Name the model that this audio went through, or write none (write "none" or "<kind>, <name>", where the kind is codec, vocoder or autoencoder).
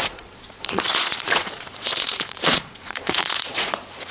vocoder, Vocos